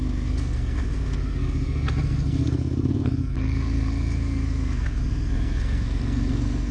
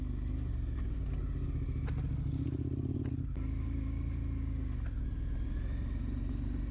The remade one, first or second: first